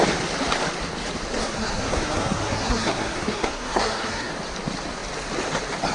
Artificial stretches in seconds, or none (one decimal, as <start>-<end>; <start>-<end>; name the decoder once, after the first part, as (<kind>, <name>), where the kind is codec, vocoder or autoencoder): 1.4-4.3 (codec, SNAC)